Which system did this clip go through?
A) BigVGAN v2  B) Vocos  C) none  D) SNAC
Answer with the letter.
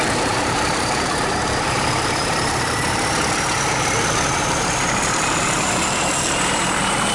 A